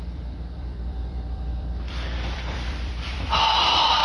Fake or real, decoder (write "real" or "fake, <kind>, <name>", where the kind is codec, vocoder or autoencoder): fake, vocoder, BigVGAN v2